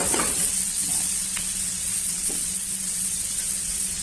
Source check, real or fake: fake